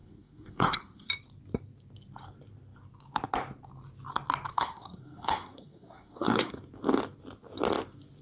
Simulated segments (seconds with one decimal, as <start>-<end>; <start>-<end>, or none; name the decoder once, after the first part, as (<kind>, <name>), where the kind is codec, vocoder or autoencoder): 0.0-1.1 (codec, SNAC); 4.5-6.5